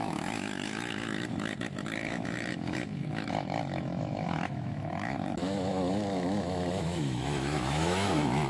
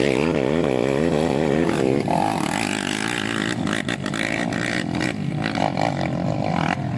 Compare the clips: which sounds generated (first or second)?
first